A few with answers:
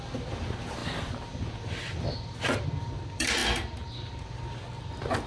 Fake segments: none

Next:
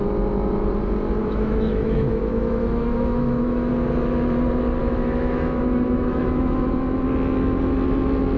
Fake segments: 1.2-3.7 (autoencoder, DAC-VAE); 4.8-6.8

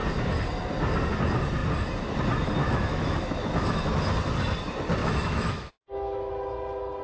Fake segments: 2.6-3.9 (autoencoder, DAC-VAE); 5.0-6.3

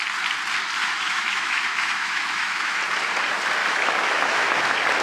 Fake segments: 0.8-2.8 (autoencoder, DAC-VAE); 3.6-4.5

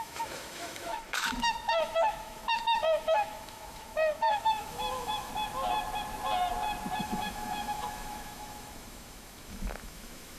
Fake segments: 0.0-5.3 (autoencoder, DAC-VAE); 7.0-10.4

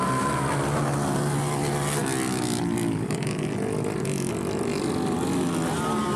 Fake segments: none